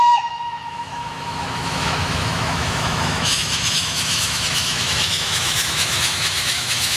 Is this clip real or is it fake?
fake